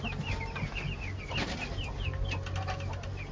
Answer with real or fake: real